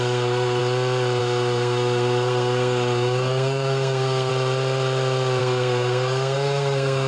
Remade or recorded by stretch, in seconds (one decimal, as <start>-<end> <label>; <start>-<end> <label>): 0.0-0.6 remade; 0.6-1.2 recorded; 1.2-4.3 remade; 4.3-5.4 recorded; 5.4-7.1 remade